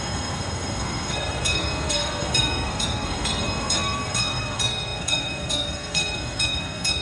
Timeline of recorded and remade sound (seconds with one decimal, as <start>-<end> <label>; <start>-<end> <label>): 0.0-7.0 remade